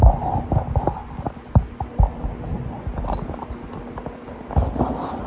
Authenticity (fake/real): real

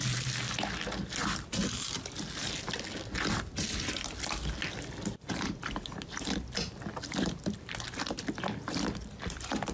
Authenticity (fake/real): real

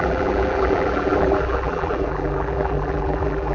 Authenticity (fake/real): fake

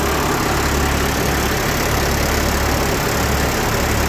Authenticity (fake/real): real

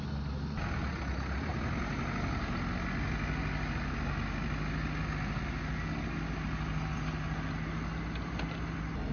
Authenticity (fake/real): real